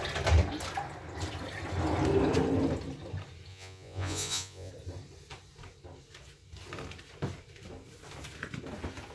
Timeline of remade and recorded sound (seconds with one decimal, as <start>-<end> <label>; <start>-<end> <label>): 0.0-3.5 recorded; 3.5-4.7 remade; 4.7-9.1 recorded